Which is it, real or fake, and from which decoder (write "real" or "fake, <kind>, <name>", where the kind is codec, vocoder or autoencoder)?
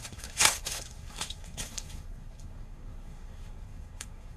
fake, codec, SNAC